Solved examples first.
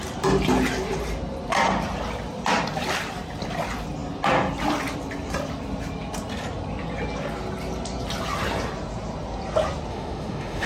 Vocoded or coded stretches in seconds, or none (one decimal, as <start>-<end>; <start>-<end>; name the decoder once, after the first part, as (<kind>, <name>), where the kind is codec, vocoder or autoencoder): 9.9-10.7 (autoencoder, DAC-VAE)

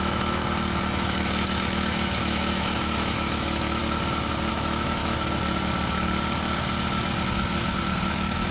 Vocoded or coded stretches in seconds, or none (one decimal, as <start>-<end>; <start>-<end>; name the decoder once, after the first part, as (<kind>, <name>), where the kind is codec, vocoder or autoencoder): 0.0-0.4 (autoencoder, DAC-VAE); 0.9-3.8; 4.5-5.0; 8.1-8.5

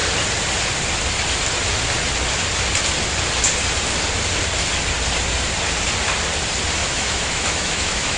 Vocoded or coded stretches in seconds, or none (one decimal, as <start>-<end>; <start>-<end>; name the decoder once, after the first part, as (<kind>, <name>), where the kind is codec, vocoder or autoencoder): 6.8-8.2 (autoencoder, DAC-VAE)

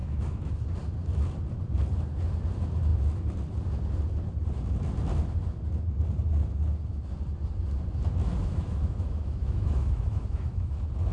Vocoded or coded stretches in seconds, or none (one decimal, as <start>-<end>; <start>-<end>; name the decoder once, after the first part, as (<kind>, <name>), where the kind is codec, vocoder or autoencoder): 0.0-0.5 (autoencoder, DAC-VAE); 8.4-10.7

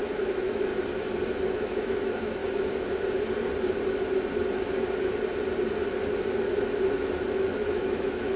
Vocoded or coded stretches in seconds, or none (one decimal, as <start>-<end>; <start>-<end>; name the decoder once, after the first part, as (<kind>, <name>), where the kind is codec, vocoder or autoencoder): 0.0-0.7 (autoencoder, DAC-VAE); 1.5-2.4; 7.3-8.4